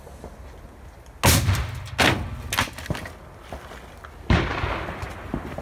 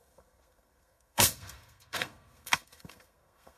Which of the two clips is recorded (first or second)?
first